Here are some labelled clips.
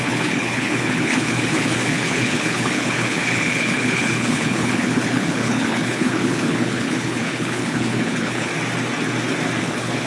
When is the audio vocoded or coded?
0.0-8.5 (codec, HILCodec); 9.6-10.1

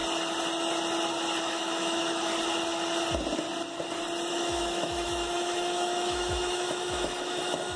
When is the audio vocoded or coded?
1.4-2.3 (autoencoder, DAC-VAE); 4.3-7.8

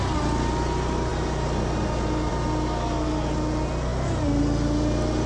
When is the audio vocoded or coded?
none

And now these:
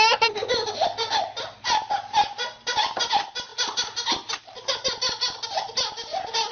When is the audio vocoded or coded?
none

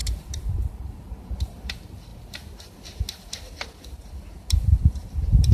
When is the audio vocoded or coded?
0.0-2.1 (vocoder, BigVGAN v2); 4.5-5.5

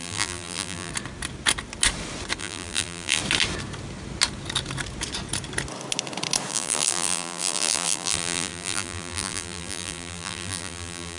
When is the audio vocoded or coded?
0.0-0.9 (vocoder, BigVGAN v2); 2.4-3.2; 6.5-11.2